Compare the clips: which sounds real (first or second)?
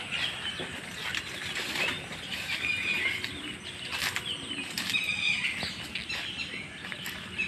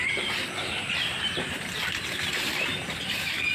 first